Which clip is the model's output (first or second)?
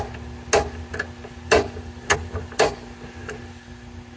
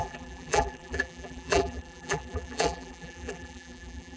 second